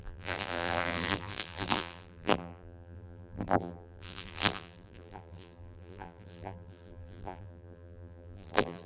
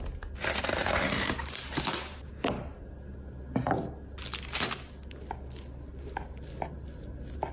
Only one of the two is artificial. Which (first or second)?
first